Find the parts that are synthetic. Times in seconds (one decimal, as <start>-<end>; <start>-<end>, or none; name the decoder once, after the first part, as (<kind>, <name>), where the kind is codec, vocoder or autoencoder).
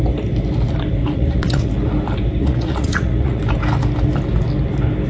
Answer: 1.0-1.7 (vocoder, Vocos); 2.4-3.4